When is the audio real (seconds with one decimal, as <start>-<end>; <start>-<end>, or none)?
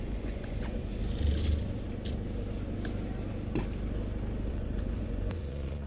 1.0-4.5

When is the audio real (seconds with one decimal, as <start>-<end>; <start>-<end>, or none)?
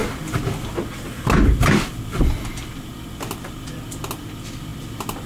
0.0-5.3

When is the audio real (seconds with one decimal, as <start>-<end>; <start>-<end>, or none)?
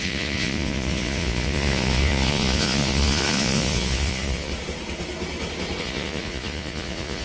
4.5-5.8